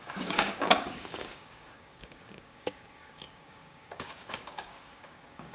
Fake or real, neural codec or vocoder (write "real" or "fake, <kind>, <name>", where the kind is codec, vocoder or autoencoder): fake, codec, DAC